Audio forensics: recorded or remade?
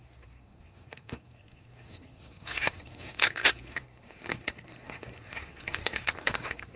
remade